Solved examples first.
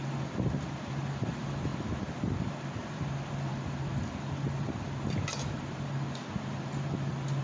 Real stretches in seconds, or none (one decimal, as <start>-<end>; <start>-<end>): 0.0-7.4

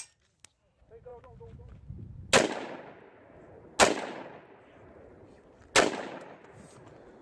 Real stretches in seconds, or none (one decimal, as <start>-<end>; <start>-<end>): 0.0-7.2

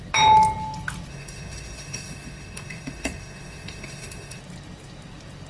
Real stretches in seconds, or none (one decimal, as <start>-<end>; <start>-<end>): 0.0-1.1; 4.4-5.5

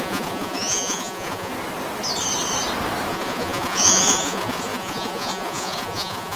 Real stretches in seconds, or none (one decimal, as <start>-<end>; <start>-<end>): 1.5-3.1